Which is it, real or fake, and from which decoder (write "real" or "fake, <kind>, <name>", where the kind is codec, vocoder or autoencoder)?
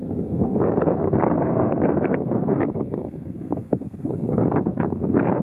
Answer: fake, codec, SNAC